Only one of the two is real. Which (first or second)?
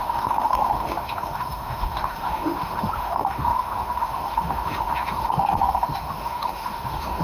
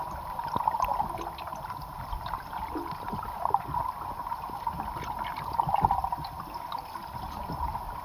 second